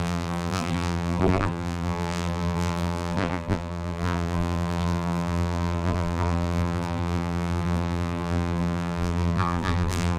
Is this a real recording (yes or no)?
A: no